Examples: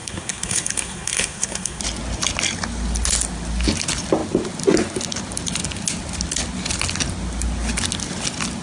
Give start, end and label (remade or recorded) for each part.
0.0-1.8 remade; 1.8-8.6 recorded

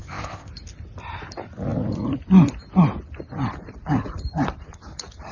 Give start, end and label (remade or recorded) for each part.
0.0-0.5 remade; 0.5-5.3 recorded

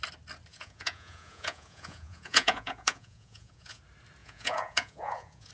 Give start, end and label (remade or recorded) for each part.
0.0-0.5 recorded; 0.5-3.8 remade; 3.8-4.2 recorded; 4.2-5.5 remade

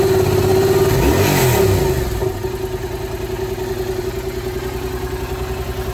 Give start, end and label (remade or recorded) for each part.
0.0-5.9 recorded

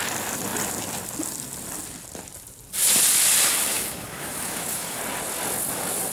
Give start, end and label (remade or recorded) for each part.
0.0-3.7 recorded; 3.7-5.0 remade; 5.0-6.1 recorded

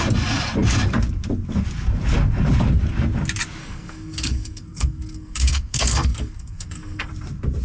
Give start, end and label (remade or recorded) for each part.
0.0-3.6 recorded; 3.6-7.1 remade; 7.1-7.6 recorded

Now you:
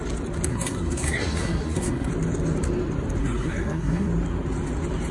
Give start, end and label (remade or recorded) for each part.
0.0-0.5 recorded; 0.5-2.1 remade; 2.1-3.2 recorded; 3.2-4.1 remade; 4.1-5.1 recorded